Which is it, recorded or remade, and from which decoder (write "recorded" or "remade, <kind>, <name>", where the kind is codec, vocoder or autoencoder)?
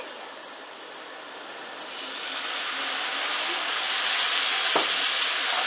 recorded